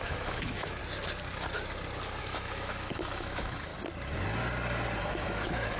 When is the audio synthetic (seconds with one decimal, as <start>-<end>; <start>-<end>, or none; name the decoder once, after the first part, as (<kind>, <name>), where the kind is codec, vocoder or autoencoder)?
0.0-0.8 (autoencoder, DAC-VAE); 2.2-3.7; 5.0-5.8